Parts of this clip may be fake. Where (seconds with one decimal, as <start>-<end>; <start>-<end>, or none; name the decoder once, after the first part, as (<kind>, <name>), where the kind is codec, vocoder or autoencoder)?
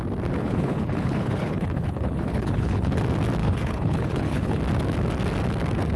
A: 0.4-3.0 (codec, HILCodec); 3.4-4.6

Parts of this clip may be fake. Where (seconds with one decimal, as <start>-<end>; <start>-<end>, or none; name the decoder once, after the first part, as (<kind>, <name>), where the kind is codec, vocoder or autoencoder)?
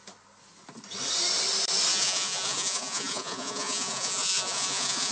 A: 1.9-5.1 (vocoder, Vocos)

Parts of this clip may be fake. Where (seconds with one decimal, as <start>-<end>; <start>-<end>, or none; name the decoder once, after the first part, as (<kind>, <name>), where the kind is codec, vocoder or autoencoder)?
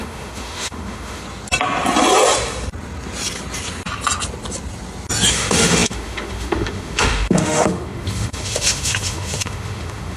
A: 0.0-1.2 (autoencoder, DAC-VAE); 5.3-10.2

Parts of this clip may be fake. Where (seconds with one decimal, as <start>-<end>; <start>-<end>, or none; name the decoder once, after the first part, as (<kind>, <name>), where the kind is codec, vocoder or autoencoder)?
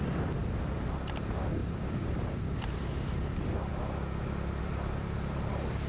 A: 1.6-2.7 (vocoder, BigVGAN v2)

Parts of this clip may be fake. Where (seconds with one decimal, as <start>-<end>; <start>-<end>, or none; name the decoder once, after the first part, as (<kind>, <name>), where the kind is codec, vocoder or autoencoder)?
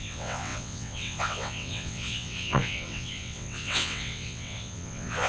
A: 0.0-5.3 (vocoder, WaveNeXt)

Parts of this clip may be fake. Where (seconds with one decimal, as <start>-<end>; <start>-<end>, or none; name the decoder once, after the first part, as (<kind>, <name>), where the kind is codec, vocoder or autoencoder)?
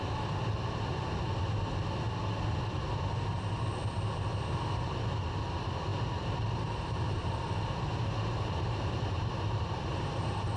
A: 5.9-10.6 (vocoder, BigVGAN v2)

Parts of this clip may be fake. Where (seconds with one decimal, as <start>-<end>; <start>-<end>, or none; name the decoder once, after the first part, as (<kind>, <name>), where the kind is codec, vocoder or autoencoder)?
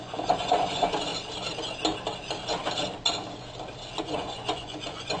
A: 0.0-1.1 (vocoder, Vocos); 4.0-5.2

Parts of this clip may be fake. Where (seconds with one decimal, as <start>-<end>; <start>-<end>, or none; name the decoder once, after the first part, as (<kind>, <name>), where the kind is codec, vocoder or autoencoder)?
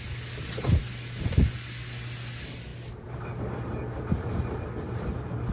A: none